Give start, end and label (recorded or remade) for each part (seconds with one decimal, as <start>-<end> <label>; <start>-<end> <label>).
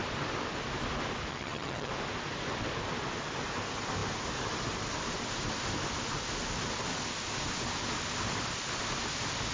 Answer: 0.0-1.3 recorded; 1.3-1.9 remade; 1.9-9.5 recorded